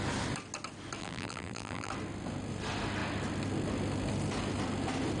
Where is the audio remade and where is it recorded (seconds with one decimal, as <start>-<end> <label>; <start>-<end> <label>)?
0.0-1.0 recorded; 1.0-1.9 remade; 1.9-5.2 recorded